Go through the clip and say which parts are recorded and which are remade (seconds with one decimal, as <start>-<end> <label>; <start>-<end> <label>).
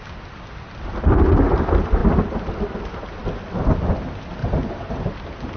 0.0-2.0 recorded; 2.0-2.5 remade; 2.5-4.4 recorded; 4.4-5.1 remade; 5.1-5.6 recorded